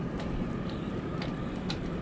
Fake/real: real